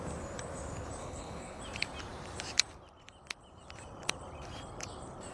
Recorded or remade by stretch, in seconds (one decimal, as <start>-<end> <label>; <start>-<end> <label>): 0.0-1.0 recorded; 1.0-1.6 remade; 1.6-5.3 recorded